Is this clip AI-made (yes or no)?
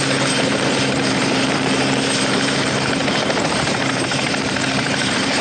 yes